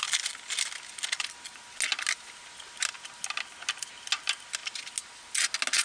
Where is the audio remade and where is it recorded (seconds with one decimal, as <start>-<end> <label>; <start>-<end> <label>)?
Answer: 0.0-5.8 recorded